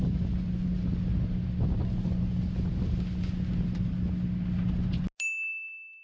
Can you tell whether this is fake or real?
real